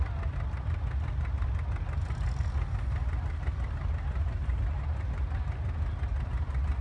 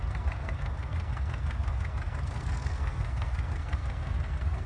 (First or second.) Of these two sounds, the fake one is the second